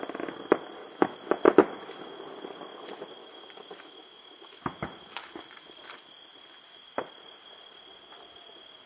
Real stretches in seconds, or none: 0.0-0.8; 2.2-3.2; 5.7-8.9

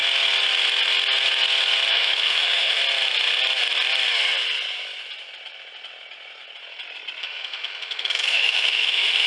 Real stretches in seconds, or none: 0.0-1.9; 2.8-7.2

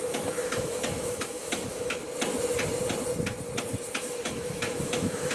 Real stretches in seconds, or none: 2.0-4.0